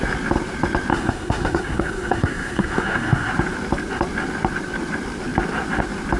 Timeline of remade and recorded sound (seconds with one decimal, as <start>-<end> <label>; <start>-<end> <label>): 0.0-0.9 recorded; 0.9-3.3 remade; 3.3-6.2 recorded